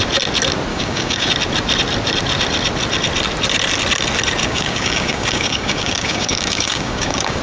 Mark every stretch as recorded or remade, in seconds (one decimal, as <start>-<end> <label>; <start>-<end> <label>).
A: 0.0-0.7 recorded; 0.7-1.3 remade; 1.3-4.4 recorded; 4.4-7.4 remade